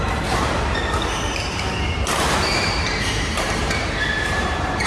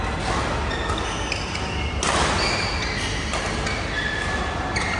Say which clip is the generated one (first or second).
first